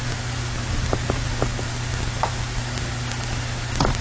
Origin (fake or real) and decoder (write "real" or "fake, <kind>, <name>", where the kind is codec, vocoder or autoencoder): real